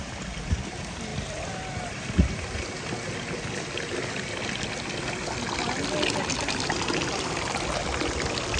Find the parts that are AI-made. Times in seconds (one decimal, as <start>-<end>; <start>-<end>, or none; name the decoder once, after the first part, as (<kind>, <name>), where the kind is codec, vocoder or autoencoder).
none